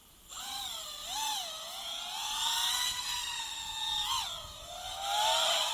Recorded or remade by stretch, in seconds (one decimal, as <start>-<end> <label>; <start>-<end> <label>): 0.0-2.7 recorded; 2.7-3.6 remade; 3.6-5.7 recorded